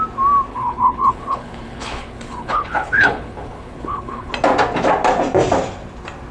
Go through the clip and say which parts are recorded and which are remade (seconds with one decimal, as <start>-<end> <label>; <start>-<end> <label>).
0.0-0.5 recorded; 0.5-4.3 remade; 4.3-6.3 recorded